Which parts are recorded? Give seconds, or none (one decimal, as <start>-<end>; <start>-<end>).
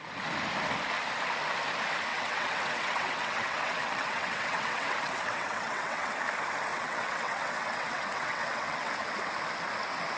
0.0-2.1; 6.1-6.7; 8.9-10.2